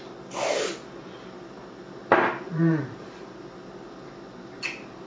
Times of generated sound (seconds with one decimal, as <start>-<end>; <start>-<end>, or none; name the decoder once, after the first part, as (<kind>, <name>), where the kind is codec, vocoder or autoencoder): 2.0-3.3 (vocoder, BigVGAN v2)